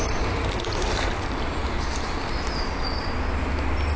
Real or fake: real